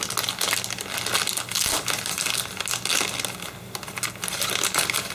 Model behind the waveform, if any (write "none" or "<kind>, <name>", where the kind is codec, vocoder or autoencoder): none